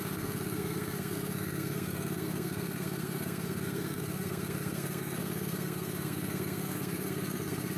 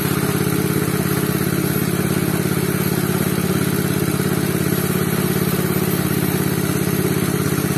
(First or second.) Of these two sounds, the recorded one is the second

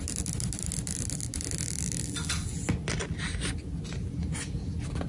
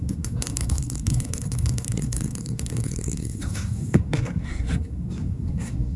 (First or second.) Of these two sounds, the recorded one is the first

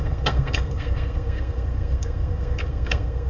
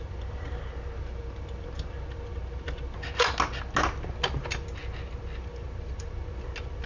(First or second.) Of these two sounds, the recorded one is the second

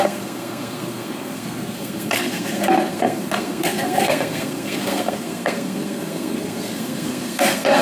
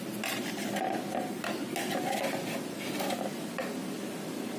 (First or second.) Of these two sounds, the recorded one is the second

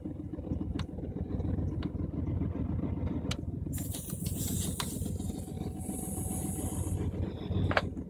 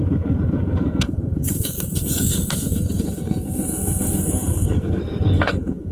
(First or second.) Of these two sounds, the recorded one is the first